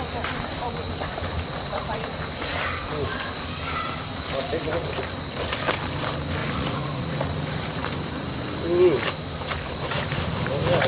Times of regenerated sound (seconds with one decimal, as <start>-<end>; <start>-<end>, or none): 1.1-2.2; 6.4-7.9